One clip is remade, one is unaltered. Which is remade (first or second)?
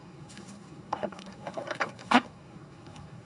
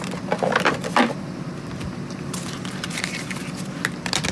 first